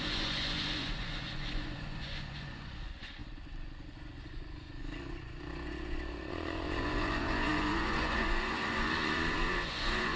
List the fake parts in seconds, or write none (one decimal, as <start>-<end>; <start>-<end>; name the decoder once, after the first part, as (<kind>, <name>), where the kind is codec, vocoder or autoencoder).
0.0-10.2 (vocoder, Vocos)